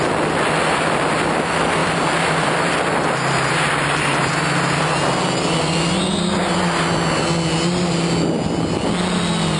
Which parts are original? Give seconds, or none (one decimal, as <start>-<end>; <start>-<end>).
0.0-9.6